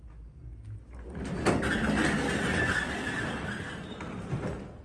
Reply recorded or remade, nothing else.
recorded